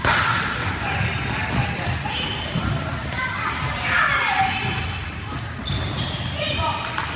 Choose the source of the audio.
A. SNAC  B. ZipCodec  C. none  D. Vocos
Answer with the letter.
C